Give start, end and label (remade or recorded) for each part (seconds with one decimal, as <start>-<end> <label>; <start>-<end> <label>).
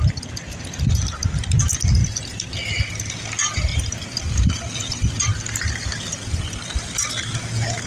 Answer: 0.0-2.0 recorded; 2.0-2.5 remade; 2.5-3.7 recorded; 3.7-6.4 remade; 6.4-7.9 recorded